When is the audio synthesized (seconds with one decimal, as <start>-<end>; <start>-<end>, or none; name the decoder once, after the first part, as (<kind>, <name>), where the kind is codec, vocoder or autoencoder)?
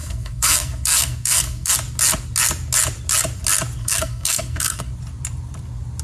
0.0-1.7 (codec, SNAC); 3.8-4.9